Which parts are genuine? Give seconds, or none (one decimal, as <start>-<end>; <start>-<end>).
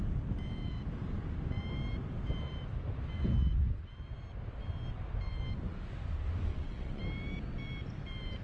0.0-6.5; 7.0-8.4